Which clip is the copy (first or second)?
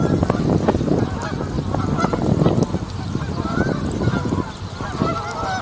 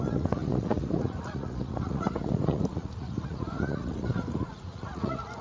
second